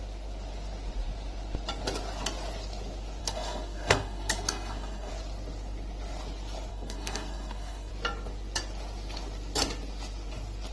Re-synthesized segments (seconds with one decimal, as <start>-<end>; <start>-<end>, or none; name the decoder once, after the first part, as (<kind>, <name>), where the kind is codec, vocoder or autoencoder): 3.2-5.1 (codec, SNAC); 6.7-7.9